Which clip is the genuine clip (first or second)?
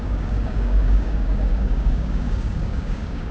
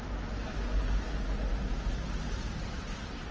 second